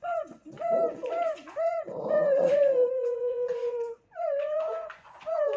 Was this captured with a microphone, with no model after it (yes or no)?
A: no